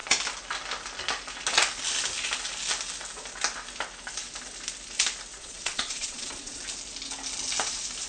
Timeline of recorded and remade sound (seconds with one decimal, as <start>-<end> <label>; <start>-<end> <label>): 0.0-5.4 recorded; 5.4-6.6 remade; 6.6-8.1 recorded